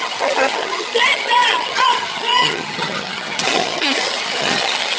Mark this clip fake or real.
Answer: fake